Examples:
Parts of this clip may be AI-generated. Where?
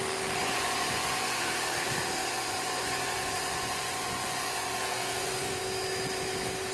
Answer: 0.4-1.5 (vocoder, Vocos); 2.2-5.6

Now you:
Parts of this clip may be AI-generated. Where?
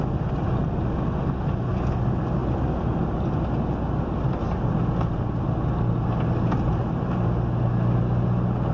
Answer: none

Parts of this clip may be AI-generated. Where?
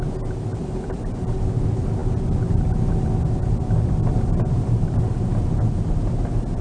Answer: 0.5-1.4 (vocoder, BigVGAN v2)